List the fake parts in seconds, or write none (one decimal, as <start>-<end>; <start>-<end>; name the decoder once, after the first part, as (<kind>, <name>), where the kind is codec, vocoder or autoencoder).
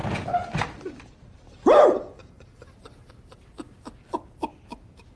0.0-3.1 (vocoder, BigVGAN v2)